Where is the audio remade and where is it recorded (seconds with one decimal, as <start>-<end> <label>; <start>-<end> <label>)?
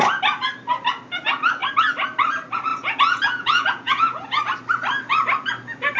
0.0-2.7 recorded; 2.7-4.4 remade; 4.4-6.0 recorded